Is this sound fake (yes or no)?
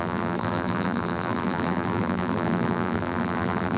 yes